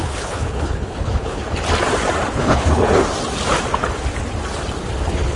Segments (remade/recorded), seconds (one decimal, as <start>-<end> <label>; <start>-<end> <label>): 0.0-1.4 remade; 1.4-2.3 recorded; 2.3-3.0 remade; 3.0-5.0 recorded; 5.0-5.4 remade